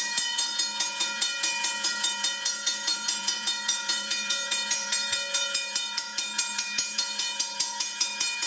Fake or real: fake